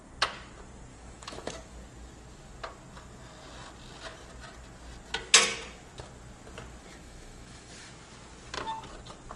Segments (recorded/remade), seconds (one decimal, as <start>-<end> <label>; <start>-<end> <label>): 0.0-0.9 recorded; 0.9-1.5 remade; 1.5-6.9 recorded; 6.9-7.9 remade; 7.9-9.4 recorded